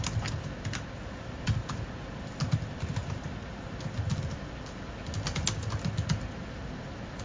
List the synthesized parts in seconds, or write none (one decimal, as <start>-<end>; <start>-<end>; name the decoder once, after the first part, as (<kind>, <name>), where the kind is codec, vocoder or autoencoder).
none